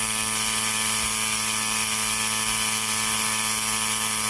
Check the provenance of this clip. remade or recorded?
recorded